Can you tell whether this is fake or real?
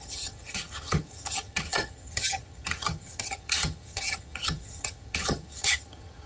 fake